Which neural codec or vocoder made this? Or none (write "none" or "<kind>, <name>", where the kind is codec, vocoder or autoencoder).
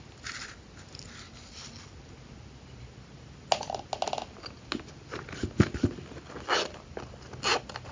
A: none